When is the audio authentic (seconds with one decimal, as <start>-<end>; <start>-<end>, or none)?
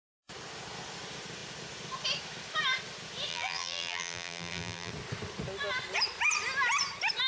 0.0-3.3; 4.9-7.3